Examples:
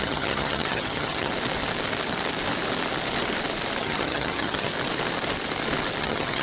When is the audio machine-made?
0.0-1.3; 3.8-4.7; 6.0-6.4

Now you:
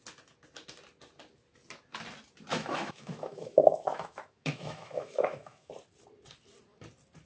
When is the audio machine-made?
2.5-5.7

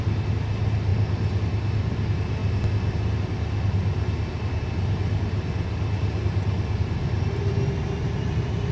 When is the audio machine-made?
none

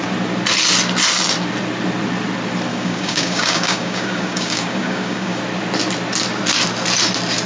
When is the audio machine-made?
2.7-5.4

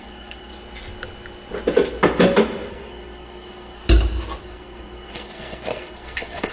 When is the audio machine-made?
0.0-0.5; 2.7-3.8; 4.4-6.5